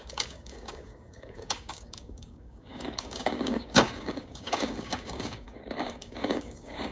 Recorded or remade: remade